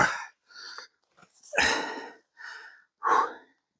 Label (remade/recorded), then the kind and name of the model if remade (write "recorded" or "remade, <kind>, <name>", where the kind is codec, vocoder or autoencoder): recorded